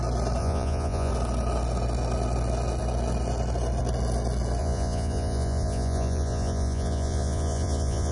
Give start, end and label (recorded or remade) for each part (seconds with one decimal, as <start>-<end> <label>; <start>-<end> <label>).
0.0-0.4 recorded; 0.4-1.1 remade; 1.1-4.6 recorded; 4.6-8.1 remade